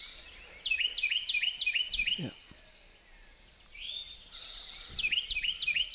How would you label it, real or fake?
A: real